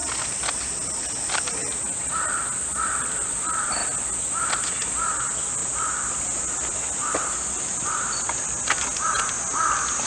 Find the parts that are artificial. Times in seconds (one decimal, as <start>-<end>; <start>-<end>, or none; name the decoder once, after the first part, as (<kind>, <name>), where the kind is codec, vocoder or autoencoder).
none